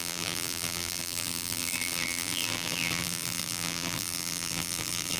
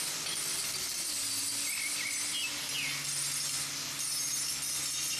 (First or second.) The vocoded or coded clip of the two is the first